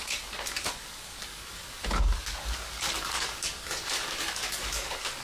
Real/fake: fake